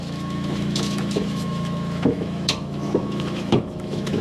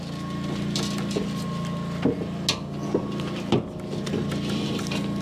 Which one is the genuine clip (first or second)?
second